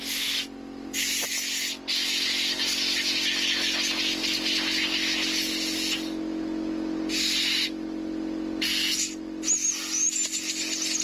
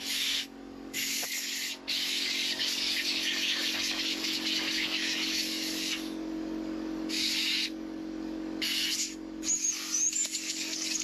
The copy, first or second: second